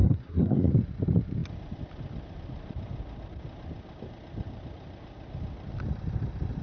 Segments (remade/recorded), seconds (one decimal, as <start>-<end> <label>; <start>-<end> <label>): 0.0-0.7 remade; 0.7-6.6 recorded